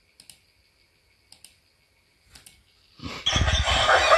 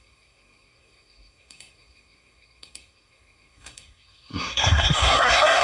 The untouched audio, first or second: first